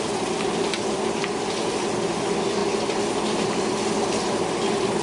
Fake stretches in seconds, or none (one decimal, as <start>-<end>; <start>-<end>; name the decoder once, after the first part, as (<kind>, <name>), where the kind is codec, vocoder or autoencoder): none